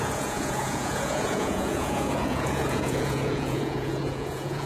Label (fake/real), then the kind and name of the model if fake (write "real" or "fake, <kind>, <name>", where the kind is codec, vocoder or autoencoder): fake, vocoder, Vocos